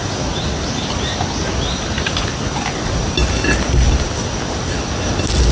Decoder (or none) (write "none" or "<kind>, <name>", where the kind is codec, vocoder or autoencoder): none